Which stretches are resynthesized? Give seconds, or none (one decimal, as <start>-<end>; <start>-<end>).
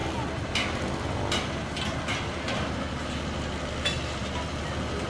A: none